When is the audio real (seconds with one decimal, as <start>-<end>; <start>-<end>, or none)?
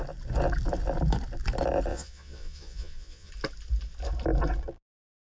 0.0-1.9; 3.3-5.3